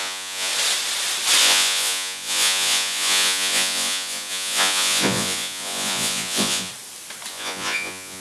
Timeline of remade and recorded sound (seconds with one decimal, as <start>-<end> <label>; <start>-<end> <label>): 0.0-0.5 remade; 0.5-1.4 recorded; 1.4-6.7 remade; 6.7-7.3 recorded; 7.3-8.2 remade